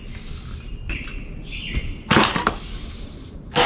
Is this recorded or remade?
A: recorded